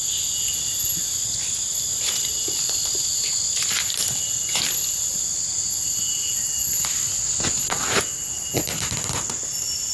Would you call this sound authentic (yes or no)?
yes